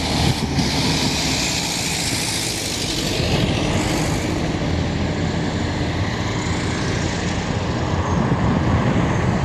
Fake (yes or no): no